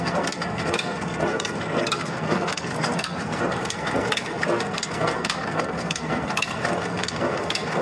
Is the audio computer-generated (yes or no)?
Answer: yes